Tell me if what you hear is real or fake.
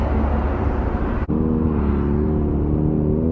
real